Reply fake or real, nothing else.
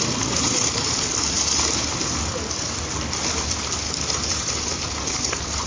real